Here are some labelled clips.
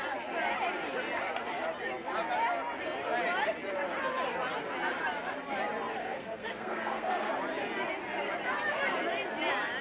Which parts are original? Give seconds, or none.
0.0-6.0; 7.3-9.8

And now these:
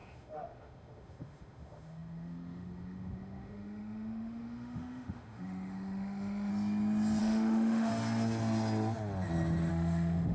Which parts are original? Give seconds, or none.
6.5-7.2; 7.9-9.7

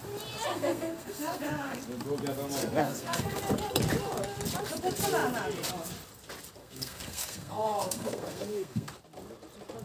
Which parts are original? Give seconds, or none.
0.0-0.5; 1.8-2.6; 3.4-6.6; 8.9-9.8

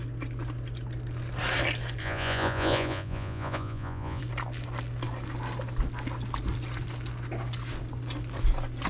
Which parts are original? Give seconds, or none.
0.0-2.0; 4.2-8.9

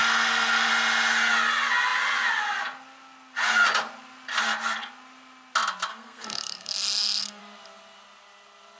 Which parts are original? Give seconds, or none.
0.7-5.9; 7.4-8.8

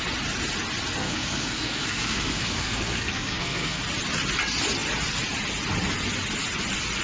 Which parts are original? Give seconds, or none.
0.0-1.0; 3.8-7.0

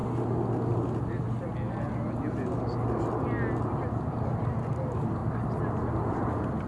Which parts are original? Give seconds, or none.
0.0-6.7